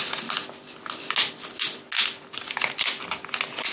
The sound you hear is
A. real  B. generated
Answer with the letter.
A